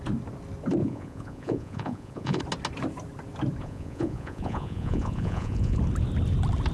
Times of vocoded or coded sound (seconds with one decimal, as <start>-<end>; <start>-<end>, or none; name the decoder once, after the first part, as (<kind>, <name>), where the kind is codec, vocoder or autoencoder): 0.8-2.4 (vocoder, Vocos); 3.6-5.8